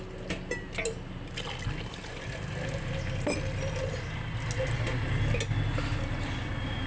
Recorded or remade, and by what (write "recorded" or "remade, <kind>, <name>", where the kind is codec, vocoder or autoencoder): recorded